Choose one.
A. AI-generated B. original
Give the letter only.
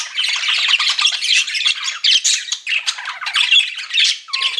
B